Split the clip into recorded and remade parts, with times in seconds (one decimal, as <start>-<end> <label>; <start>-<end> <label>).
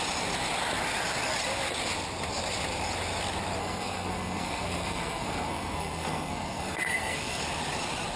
0.0-3.6 recorded; 3.6-7.4 remade; 7.4-8.2 recorded